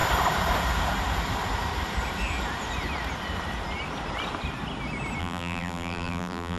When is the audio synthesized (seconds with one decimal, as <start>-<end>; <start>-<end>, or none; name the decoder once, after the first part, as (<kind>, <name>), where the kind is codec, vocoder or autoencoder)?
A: 5.2-6.6 (vocoder, BigVGAN v2)